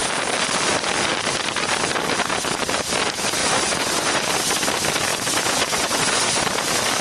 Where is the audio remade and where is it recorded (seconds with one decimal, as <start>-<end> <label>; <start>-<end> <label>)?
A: 0.0-3.4 recorded; 3.4-4.3 remade; 4.3-5.1 recorded; 5.1-6.4 remade; 6.4-7.0 recorded